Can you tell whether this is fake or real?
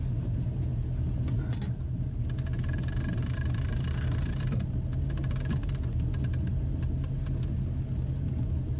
real